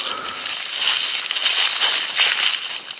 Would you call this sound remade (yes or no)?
no